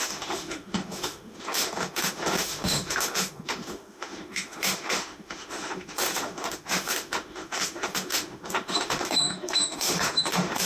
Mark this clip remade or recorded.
remade